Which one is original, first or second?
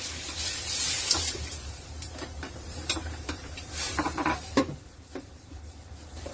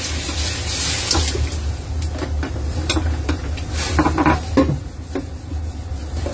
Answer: second